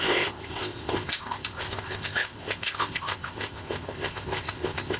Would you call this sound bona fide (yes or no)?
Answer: no